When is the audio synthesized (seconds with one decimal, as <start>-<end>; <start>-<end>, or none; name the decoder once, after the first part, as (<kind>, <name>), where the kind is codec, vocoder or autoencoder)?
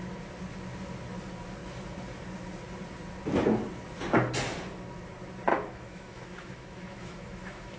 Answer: 5.5-7.8 (autoencoder, DAC-VAE)